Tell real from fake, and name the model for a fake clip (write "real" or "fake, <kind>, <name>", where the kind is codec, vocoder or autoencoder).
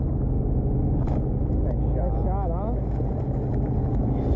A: real